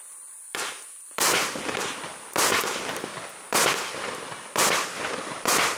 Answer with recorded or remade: remade